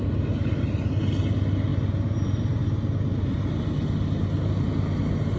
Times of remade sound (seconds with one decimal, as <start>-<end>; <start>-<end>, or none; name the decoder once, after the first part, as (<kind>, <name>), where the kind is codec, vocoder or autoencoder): none